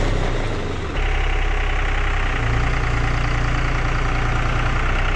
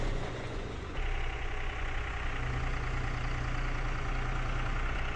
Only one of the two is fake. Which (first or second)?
second